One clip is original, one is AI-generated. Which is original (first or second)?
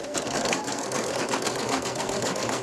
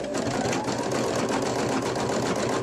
second